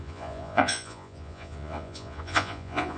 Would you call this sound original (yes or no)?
no